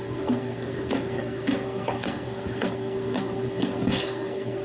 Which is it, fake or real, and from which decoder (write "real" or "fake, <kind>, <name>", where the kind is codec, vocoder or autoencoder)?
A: fake, codec, SNAC